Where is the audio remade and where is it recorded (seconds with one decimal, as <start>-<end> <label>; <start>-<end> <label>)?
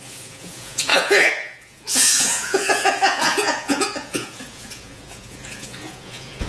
0.0-6.5 remade